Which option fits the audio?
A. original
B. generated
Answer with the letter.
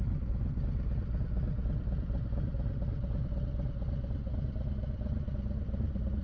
A